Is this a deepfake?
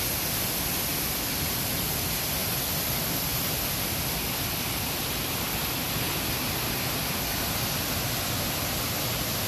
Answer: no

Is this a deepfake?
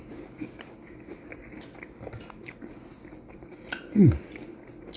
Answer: no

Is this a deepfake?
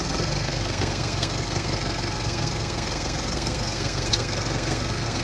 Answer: yes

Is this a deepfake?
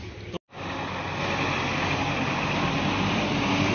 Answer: no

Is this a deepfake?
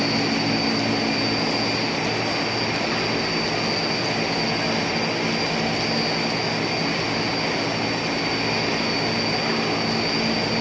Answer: no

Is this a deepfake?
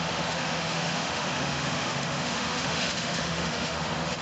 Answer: yes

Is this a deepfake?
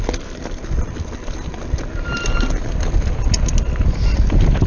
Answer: no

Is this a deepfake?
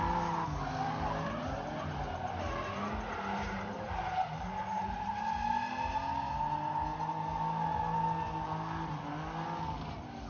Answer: no